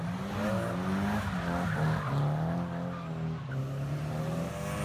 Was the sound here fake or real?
real